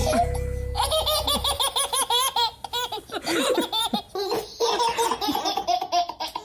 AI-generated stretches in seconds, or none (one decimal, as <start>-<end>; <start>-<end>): none